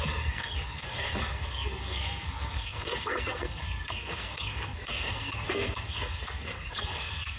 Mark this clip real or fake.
fake